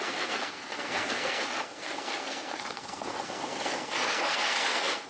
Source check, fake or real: fake